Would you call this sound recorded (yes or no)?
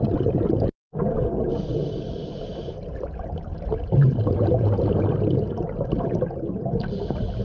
yes